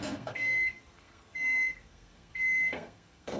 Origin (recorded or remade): remade